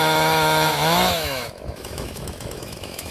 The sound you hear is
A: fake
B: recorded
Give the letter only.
A